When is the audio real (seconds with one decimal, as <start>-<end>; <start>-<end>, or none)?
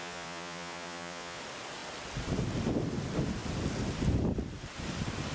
1.4-5.3